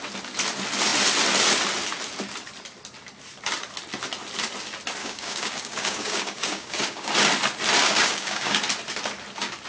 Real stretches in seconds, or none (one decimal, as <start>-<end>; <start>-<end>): 0.0-5.0; 7.1-7.8; 8.6-9.7